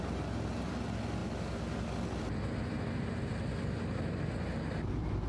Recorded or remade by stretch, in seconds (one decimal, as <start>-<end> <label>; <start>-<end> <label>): 0.0-5.3 recorded